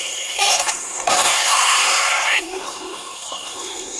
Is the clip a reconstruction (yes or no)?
yes